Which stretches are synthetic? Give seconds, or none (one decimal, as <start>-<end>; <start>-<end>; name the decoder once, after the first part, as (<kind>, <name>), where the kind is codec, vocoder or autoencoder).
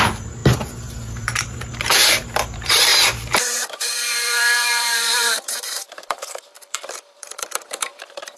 0.0-8.4 (vocoder, BigVGAN v2)